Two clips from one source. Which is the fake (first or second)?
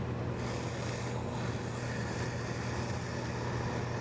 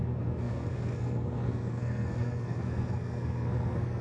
second